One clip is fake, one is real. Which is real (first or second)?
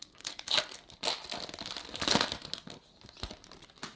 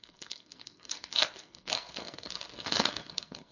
first